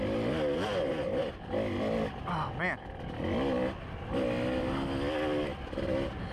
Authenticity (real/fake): real